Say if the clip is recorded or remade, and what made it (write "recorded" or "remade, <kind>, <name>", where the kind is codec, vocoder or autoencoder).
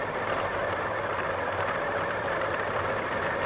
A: recorded